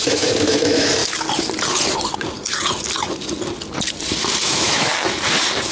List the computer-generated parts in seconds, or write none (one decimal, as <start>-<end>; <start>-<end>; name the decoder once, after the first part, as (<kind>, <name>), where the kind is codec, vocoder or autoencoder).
0.0-1.0 (autoencoder, DAC-VAE); 4.4-4.9